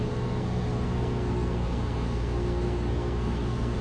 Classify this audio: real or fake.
fake